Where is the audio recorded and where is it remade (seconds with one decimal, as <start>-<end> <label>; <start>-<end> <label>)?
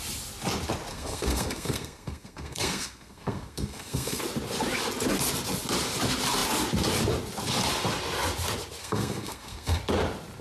0.0-0.9 recorded; 0.9-4.2 remade; 4.2-8.8 recorded; 8.8-9.8 remade; 9.8-10.4 recorded